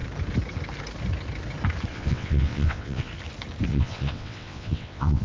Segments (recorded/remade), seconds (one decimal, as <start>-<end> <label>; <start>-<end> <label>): 0.0-1.9 recorded; 1.9-3.1 remade; 3.1-3.7 recorded; 3.7-5.2 remade